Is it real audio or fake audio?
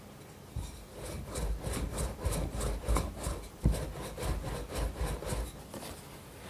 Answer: real